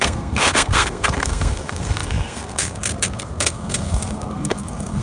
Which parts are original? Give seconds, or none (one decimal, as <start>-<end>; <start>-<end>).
none